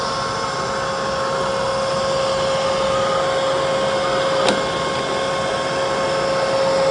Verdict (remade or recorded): recorded